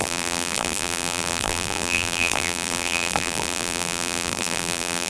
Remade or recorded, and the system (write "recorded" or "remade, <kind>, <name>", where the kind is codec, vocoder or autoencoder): remade, vocoder, BigVGAN v2